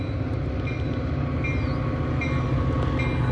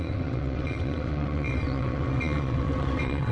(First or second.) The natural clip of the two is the first